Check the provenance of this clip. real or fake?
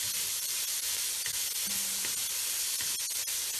real